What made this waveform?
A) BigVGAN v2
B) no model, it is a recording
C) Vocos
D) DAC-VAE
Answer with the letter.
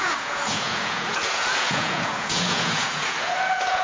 C